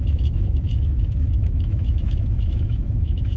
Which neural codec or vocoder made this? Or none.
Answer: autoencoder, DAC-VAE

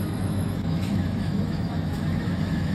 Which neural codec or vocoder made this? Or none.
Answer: autoencoder, DAC-VAE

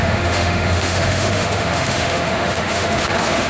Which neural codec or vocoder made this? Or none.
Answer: autoencoder, DAC-VAE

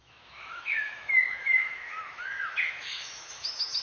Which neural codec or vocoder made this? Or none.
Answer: autoencoder, DAC-VAE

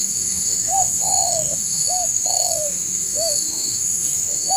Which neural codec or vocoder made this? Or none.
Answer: autoencoder, DAC-VAE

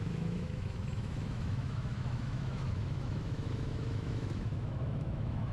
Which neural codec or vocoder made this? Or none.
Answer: autoencoder, DAC-VAE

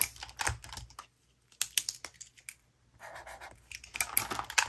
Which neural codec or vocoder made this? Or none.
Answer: none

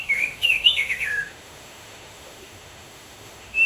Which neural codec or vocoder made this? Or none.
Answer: autoencoder, DAC-VAE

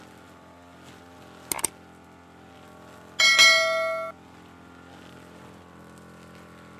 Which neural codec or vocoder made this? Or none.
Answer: none